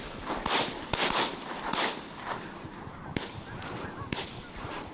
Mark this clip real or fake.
fake